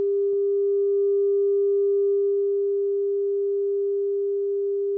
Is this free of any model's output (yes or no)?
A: yes